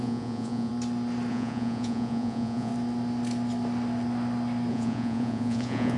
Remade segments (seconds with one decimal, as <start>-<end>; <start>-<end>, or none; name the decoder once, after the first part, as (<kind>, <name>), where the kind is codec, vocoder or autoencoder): 0.0-0.7 (vocoder, Vocos); 1.3-2.7; 4.7-6.0